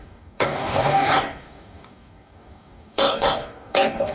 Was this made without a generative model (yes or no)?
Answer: no